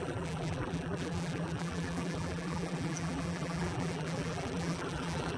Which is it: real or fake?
fake